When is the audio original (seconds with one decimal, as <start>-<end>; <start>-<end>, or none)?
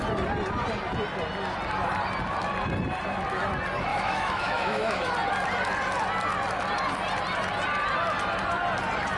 0.0-3.9; 5.1-9.2